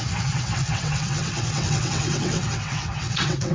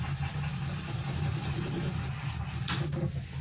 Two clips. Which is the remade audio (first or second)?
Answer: first